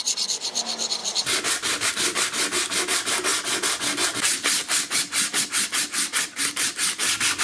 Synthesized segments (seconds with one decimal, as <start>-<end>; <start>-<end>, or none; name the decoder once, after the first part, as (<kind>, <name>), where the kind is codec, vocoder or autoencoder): 1.0-1.9 (vocoder, BigVGAN v2)